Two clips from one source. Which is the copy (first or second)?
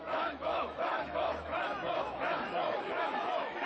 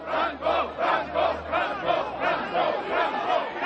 first